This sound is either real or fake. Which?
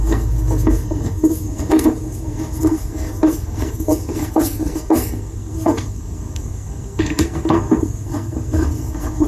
fake